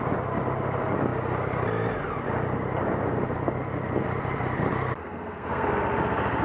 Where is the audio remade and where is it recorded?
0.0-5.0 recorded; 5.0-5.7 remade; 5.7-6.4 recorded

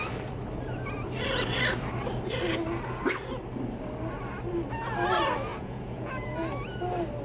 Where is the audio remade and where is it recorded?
0.0-5.5 recorded; 5.5-6.1 remade; 6.1-7.2 recorded

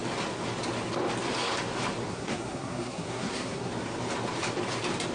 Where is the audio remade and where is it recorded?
0.0-2.1 recorded; 2.1-3.7 remade; 3.7-5.1 recorded

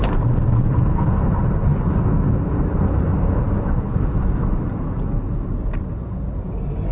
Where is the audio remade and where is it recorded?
0.0-0.9 remade; 0.9-6.9 recorded